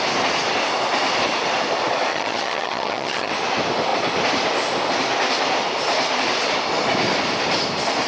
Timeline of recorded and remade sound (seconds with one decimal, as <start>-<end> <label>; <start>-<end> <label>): 0.0-2.1 recorded; 2.1-3.3 remade; 3.3-8.1 recorded